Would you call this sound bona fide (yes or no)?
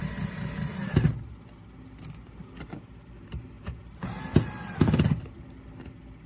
yes